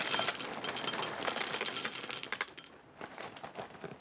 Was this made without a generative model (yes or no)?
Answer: yes